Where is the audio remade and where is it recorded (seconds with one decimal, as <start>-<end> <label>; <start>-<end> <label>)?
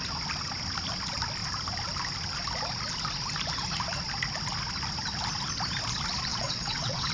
0.0-6.3 recorded; 6.3-7.1 remade